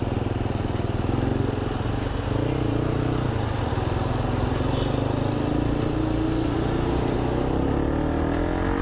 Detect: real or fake real